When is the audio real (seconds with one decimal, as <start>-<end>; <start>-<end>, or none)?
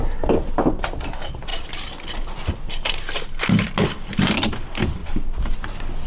0.0-6.1